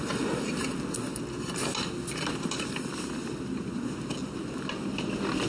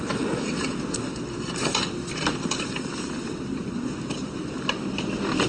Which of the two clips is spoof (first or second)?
second